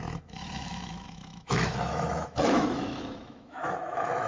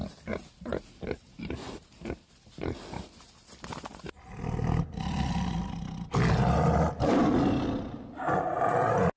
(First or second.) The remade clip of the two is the first